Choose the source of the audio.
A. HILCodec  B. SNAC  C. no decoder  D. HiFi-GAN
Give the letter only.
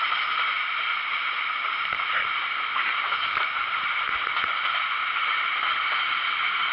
C